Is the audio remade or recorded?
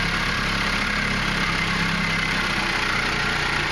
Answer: recorded